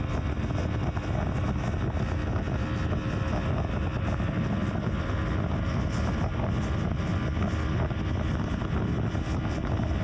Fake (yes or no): no